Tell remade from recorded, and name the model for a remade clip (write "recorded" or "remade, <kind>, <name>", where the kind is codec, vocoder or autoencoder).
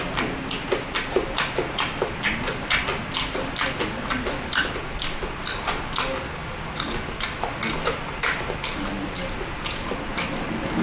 recorded